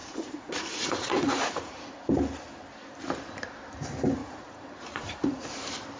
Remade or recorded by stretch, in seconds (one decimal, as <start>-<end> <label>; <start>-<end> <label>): 0.0-2.0 remade; 2.0-4.2 recorded; 4.2-5.4 remade; 5.4-6.0 recorded

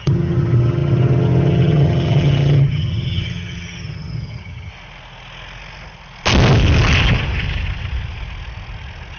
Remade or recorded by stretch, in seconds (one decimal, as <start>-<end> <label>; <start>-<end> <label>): 0.0-4.7 remade; 4.7-9.2 recorded

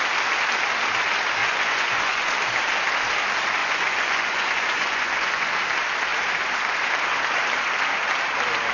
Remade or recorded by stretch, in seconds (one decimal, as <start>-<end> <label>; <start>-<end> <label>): 0.0-1.4 recorded; 1.4-2.3 remade; 2.3-3.6 recorded; 3.6-5.5 remade; 5.5-8.7 recorded